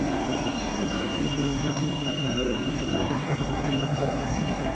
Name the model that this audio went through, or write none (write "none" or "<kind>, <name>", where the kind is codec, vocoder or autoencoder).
codec, SNAC